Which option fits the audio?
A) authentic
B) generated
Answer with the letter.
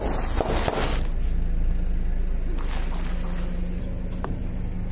A